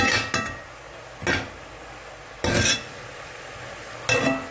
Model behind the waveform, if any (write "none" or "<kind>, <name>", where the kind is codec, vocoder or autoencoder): none